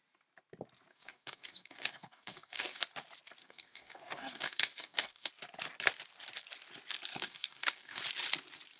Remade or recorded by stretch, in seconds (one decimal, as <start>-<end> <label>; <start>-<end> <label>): 0.0-0.9 recorded; 0.9-2.8 remade; 2.8-3.4 recorded; 3.4-5.3 remade; 5.3-7.1 recorded; 7.1-8.0 remade; 8.0-8.8 recorded